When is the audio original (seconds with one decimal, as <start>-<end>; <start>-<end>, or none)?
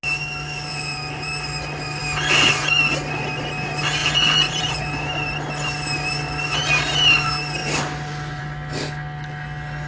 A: 0.0-0.7; 1.3-4.0; 4.8-9.9